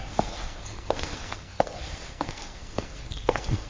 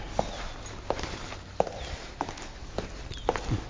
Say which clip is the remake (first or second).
first